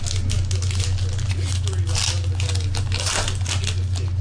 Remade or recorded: recorded